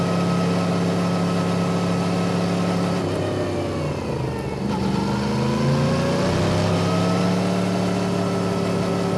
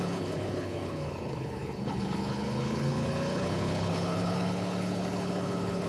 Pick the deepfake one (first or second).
second